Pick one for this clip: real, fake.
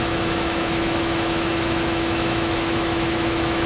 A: fake